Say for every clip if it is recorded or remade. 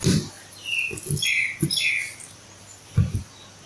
recorded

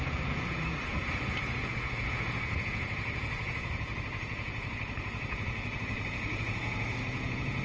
remade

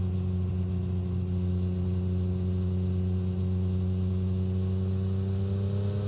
recorded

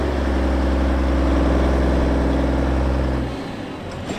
recorded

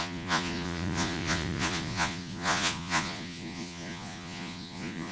remade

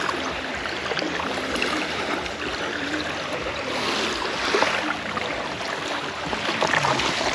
recorded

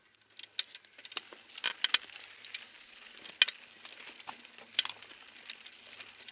recorded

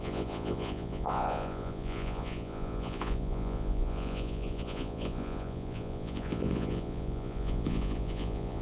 remade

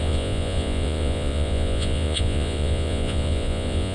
remade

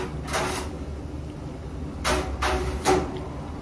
recorded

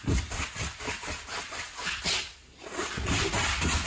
recorded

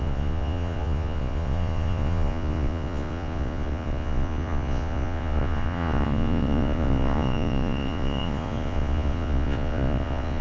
remade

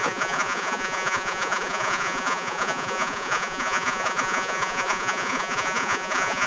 remade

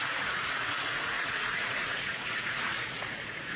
remade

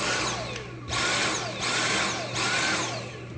recorded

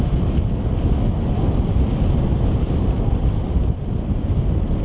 recorded